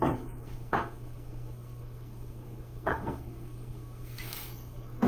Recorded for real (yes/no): no